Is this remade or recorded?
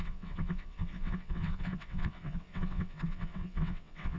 remade